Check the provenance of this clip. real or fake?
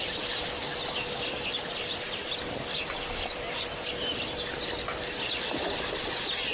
real